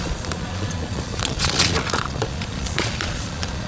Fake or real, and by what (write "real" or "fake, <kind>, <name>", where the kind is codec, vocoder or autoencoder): fake, vocoder, Vocos